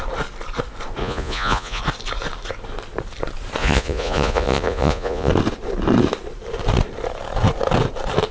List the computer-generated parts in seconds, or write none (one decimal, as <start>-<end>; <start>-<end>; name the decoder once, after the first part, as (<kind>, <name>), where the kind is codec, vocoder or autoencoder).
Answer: 1.0-1.8 (vocoder, Vocos); 3.6-5.3